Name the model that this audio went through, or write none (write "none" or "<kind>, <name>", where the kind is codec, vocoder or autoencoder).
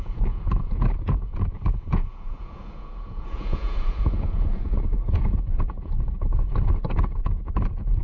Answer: vocoder, Vocos